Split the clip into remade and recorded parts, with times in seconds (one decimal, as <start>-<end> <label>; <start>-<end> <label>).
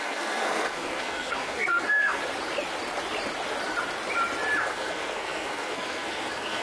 0.0-2.2 remade; 2.2-4.6 recorded; 4.6-6.6 remade